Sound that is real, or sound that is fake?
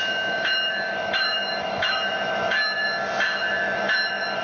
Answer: fake